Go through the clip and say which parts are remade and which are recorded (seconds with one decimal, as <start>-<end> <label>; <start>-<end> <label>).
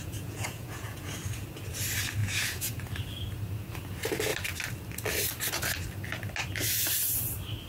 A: 0.0-1.1 remade; 1.1-2.2 recorded; 2.2-2.8 remade; 2.8-7.7 recorded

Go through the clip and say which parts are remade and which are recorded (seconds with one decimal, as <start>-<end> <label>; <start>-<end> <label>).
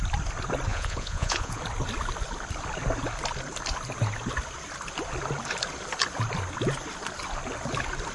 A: 0.0-0.7 recorded; 0.7-1.6 remade; 1.6-8.1 recorded